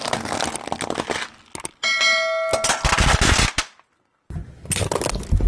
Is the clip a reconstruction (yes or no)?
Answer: no